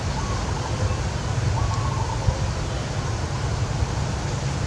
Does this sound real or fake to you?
real